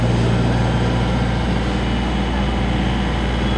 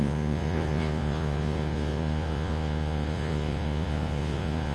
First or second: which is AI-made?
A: second